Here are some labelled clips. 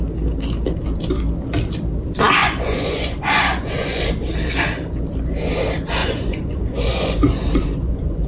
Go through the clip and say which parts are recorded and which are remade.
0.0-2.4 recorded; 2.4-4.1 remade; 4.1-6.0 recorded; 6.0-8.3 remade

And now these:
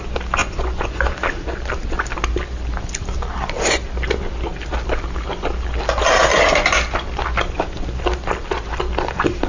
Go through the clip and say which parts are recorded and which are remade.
0.0-0.4 recorded; 0.4-1.1 remade; 1.1-9.5 recorded

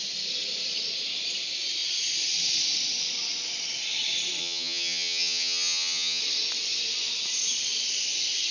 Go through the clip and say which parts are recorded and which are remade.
0.0-4.4 recorded; 4.4-6.2 remade; 6.2-8.5 recorded

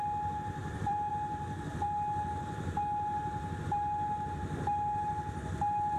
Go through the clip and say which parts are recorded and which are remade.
0.0-6.0 recorded